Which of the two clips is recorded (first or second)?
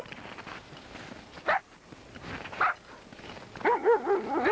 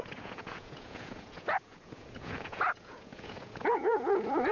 first